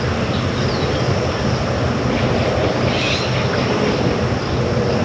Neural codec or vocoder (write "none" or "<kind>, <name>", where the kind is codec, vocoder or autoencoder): none